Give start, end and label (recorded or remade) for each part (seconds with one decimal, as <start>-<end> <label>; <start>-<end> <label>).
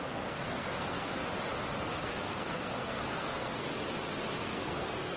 0.0-1.2 remade; 1.2-1.7 recorded; 1.7-3.7 remade; 3.7-4.4 recorded; 4.4-5.2 remade